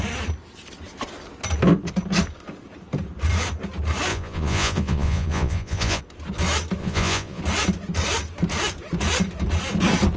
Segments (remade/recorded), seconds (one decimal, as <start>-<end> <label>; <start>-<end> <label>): 0.0-4.1 recorded; 4.1-6.0 remade; 6.0-6.8 recorded; 6.8-7.4 remade; 7.4-10.2 recorded